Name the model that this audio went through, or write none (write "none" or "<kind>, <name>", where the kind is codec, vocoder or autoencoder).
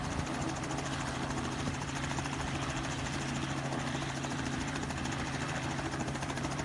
vocoder, BigVGAN v2